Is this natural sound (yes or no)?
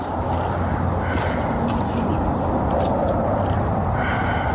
yes